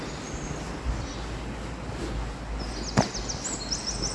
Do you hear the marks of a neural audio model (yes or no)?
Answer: no